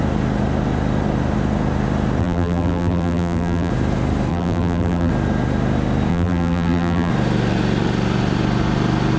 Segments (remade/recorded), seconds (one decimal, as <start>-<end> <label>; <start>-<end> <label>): 0.0-2.2 recorded; 2.2-3.7 remade; 3.7-4.3 recorded; 4.3-5.1 remade; 5.1-6.1 recorded; 6.1-7.1 remade; 7.1-9.2 recorded

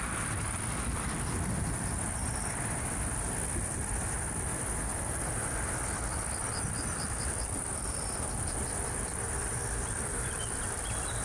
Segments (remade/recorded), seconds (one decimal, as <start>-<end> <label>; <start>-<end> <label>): 0.0-2.2 remade; 2.2-6.5 recorded; 6.5-11.2 remade

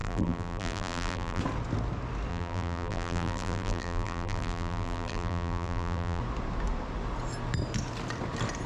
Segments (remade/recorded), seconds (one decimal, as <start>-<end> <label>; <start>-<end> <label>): 0.0-1.4 remade; 1.4-2.3 recorded; 2.3-6.2 remade; 6.2-8.7 recorded